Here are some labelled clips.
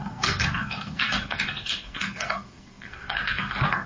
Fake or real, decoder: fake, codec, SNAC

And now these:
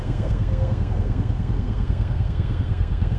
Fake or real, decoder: fake, codec, SNAC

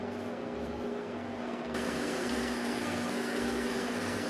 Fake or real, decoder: fake, codec, SNAC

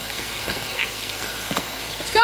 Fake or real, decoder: fake, codec, SNAC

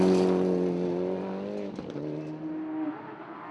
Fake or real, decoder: real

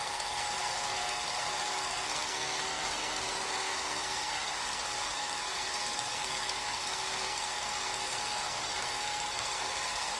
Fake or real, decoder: fake, codec, SNAC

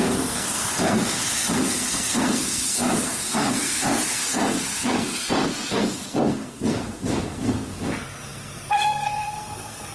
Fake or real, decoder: fake, codec, SNAC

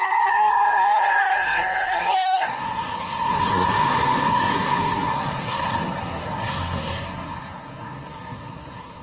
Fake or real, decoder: fake, codec, SNAC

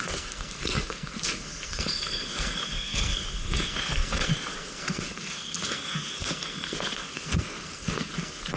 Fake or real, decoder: fake, codec, SNAC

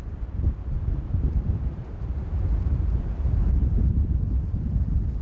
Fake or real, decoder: real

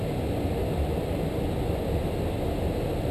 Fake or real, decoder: real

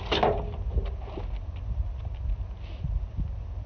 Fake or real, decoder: real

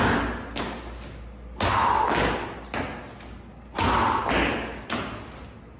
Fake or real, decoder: real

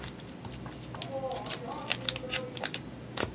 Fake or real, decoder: real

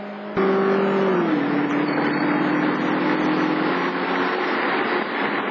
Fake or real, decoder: real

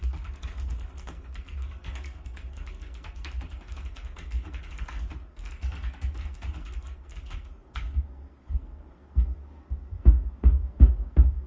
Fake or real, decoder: fake, codec, SNAC